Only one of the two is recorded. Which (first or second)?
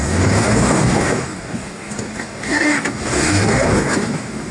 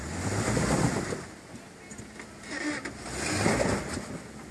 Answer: second